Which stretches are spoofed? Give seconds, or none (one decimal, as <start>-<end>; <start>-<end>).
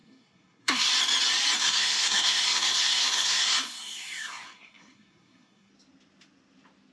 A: 0.0-0.9; 1.6-5.7